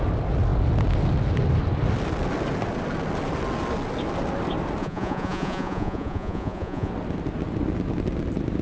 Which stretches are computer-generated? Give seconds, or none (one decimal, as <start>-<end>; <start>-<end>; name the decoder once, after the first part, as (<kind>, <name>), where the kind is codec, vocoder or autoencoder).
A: 4.8-6.9 (vocoder, Vocos)